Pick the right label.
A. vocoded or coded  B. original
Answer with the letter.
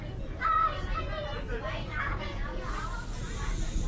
A